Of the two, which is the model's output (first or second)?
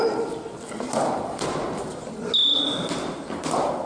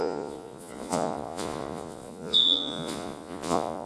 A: second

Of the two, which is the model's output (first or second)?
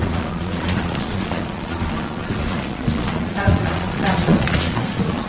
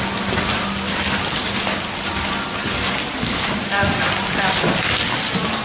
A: first